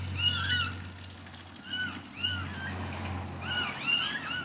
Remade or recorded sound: recorded